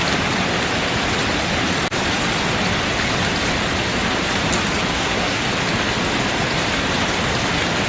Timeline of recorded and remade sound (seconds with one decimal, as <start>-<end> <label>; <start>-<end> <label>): 0.0-4.9 recorded; 4.9-5.4 remade; 5.4-7.9 recorded

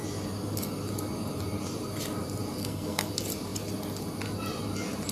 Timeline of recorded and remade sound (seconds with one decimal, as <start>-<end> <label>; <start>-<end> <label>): 0.0-2.6 recorded; 2.6-3.1 remade; 3.1-5.1 recorded

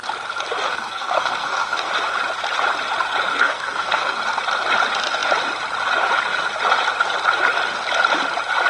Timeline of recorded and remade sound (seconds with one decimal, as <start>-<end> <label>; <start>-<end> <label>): 0.0-0.7 recorded; 0.7-1.9 remade; 1.9-3.3 recorded; 3.3-4.2 remade; 4.2-8.7 recorded

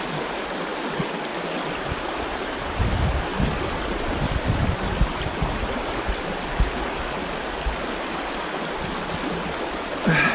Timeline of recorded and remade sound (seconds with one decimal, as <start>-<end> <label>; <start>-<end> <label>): 0.0-10.3 recorded

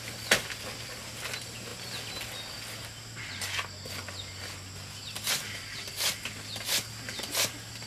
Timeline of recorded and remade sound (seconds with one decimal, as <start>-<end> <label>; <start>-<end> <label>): 0.0-7.9 recorded

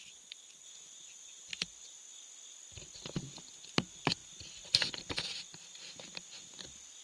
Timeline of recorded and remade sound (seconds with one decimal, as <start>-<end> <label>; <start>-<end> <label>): 0.0-7.0 recorded

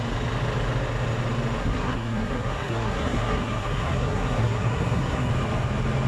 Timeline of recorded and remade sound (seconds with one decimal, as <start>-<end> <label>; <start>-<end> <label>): 0.0-1.6 recorded; 1.6-5.3 remade; 5.3-6.1 recorded

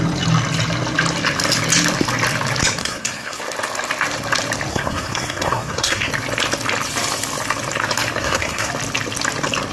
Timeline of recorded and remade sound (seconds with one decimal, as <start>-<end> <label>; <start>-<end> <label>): 0.0-2.8 recorded; 2.8-3.4 remade; 3.4-4.7 recorded; 4.7-6.1 remade; 6.1-8.2 recorded; 8.2-8.7 remade; 8.7-9.7 recorded